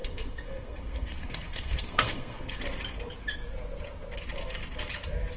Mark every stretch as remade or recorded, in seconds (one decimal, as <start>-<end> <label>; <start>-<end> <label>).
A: 0.0-2.6 remade; 2.6-5.4 recorded